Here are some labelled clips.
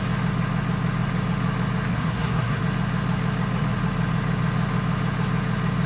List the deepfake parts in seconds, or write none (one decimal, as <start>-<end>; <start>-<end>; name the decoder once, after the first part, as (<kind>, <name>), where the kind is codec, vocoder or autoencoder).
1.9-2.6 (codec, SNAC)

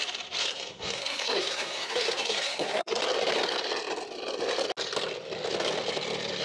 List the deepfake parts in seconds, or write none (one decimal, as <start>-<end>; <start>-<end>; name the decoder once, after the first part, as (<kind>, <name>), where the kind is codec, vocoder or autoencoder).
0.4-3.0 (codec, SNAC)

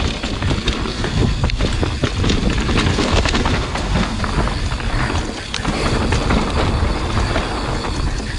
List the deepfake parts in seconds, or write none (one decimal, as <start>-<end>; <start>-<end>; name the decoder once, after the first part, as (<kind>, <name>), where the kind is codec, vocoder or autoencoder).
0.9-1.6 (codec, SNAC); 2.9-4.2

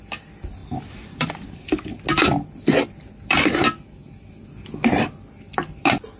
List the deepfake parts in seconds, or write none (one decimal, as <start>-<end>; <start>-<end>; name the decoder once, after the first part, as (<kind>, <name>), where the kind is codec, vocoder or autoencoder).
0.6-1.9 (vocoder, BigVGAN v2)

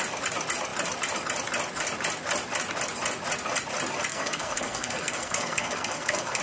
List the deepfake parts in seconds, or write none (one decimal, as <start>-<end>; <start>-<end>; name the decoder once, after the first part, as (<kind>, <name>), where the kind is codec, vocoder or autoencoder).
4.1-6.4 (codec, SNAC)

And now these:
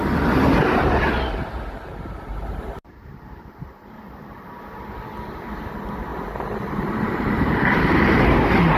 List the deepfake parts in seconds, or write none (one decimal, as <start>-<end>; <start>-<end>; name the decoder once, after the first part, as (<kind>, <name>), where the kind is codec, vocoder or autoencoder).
1.9-4.6 (vocoder, BigVGAN v2); 6.1-8.3